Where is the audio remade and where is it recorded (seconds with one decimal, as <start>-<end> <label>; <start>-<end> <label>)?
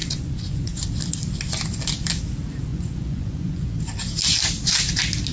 0.0-0.9 remade; 0.9-2.7 recorded; 2.7-3.8 remade; 3.8-5.3 recorded